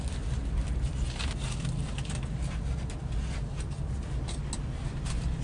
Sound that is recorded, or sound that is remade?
recorded